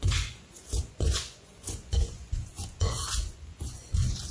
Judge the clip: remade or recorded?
remade